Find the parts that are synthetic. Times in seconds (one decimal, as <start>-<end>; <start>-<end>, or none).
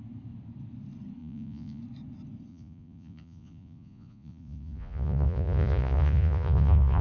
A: 1.2-1.8; 2.5-7.0